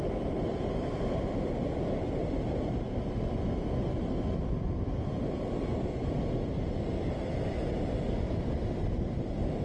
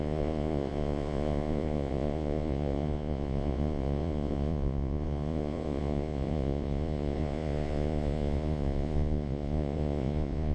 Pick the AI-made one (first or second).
second